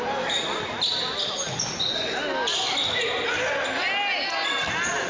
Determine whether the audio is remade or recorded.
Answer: recorded